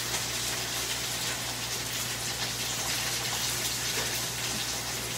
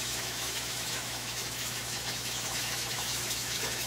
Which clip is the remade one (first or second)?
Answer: second